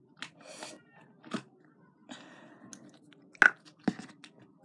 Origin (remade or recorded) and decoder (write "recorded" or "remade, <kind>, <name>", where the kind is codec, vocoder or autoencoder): recorded